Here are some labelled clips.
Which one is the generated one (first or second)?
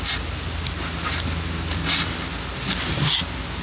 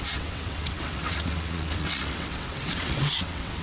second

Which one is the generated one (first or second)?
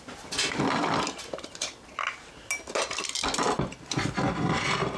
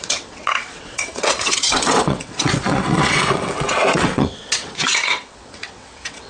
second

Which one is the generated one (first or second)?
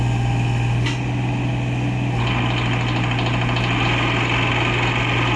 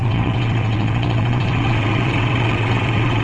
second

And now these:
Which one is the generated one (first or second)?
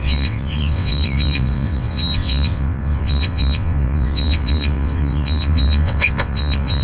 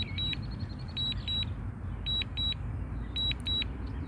first